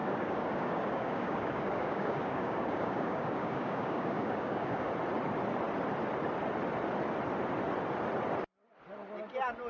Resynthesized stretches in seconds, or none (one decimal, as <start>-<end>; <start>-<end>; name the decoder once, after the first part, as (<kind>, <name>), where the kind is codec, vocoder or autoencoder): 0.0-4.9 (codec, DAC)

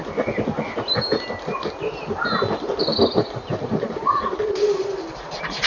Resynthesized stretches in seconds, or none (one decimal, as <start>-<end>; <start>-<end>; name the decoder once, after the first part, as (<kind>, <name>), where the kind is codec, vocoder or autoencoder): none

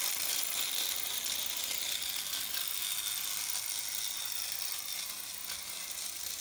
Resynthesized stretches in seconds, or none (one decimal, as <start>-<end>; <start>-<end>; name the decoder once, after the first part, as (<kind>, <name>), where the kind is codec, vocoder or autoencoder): none